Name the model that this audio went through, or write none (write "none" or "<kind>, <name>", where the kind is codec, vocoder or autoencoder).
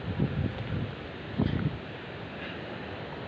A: none